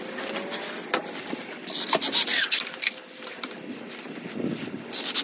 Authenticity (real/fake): real